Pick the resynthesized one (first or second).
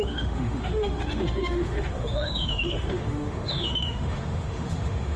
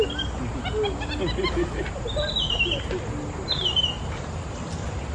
first